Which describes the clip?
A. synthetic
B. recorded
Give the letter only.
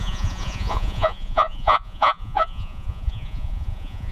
A